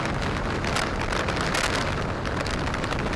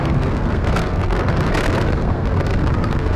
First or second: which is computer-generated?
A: second